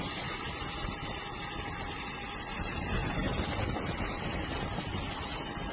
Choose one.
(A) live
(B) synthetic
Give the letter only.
A